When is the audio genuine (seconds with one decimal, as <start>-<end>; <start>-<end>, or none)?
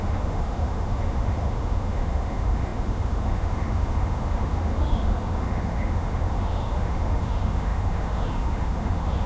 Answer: none